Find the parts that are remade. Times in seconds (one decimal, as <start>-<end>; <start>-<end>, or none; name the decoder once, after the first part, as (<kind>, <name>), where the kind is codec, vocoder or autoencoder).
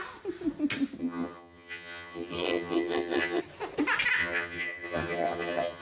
1.0-3.4 (vocoder, HiFi-GAN); 4.2-5.8